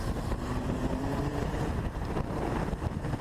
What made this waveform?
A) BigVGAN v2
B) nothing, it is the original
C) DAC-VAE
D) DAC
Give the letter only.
A